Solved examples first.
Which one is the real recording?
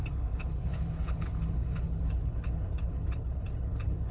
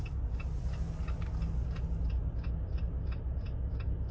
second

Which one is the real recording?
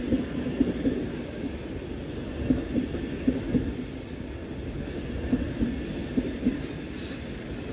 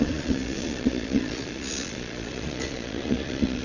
first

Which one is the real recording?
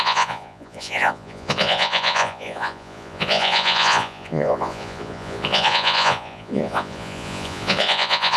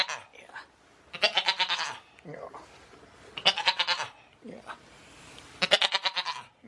second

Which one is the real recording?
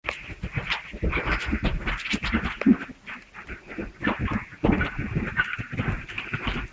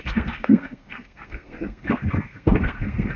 first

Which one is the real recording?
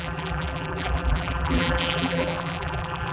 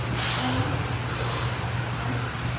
second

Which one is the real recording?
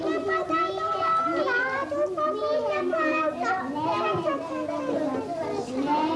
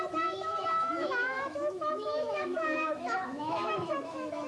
first